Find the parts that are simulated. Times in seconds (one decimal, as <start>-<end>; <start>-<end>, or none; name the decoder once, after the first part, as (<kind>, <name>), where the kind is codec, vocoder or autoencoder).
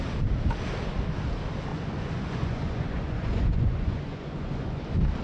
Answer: 1.7-4.8 (vocoder, Vocos)